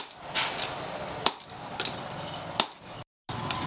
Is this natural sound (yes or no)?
yes